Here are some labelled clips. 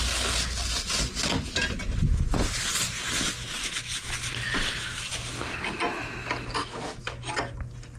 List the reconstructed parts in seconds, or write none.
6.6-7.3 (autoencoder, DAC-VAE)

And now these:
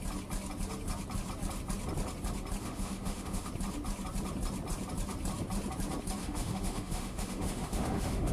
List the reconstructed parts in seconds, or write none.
2.6-3.5 (autoencoder, DAC-VAE); 6.2-8.3

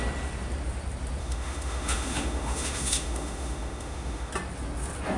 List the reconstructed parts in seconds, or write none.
1.2-4.3 (autoencoder, DAC-VAE)

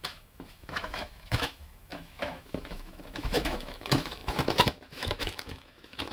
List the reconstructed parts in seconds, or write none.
0.0-6.1 (autoencoder, DAC-VAE)

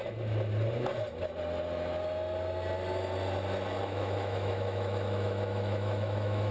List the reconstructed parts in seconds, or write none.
3.8-6.5 (autoencoder, DAC-VAE)

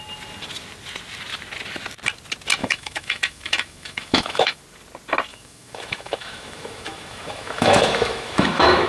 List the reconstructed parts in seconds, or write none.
2.6-4.6 (autoencoder, DAC-VAE); 5.3-8.9

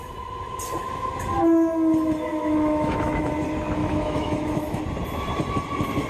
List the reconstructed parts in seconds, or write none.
2.3-3.3 (autoencoder, DAC-VAE); 3.8-4.8

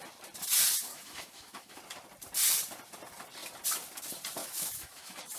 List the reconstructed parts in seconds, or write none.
0.9-1.8 (autoencoder, DAC-VAE); 4.4-5.4